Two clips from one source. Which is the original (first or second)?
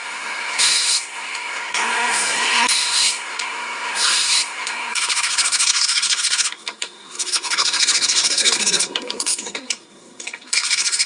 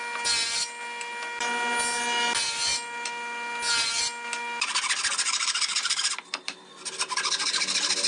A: second